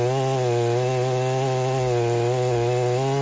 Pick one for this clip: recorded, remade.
recorded